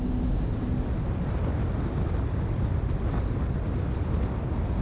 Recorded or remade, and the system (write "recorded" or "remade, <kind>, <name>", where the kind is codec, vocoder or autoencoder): recorded